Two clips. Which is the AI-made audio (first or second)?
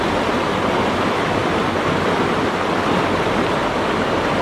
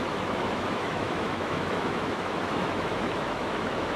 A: second